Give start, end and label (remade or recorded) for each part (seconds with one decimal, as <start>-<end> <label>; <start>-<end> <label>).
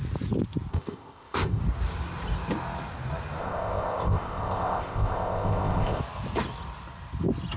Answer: 0.0-0.7 recorded; 0.7-1.6 remade; 1.6-3.4 recorded; 3.4-6.0 remade; 6.0-7.6 recorded